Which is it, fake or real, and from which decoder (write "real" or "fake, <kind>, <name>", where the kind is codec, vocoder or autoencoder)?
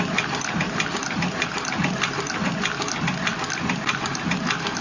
real